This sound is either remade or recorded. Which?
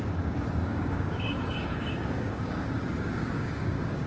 remade